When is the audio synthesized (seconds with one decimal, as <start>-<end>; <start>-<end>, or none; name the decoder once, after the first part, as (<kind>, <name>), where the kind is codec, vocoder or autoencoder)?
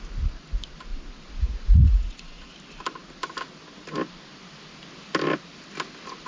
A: 0.9-2.5 (vocoder, Vocos)